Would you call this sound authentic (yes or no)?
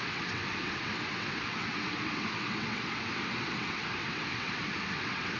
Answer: no